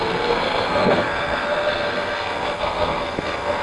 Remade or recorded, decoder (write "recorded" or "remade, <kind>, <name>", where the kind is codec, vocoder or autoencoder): remade, codec, SNAC